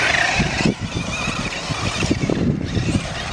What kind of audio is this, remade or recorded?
remade